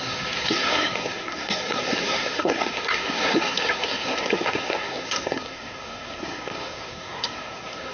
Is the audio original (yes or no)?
no